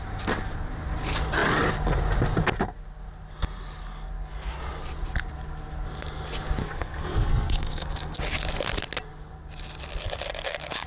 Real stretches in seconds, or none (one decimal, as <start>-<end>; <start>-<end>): 0.0-6.6; 8.2-10.9